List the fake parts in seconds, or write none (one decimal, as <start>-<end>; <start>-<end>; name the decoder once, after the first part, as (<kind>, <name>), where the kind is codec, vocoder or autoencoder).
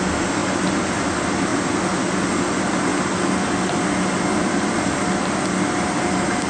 none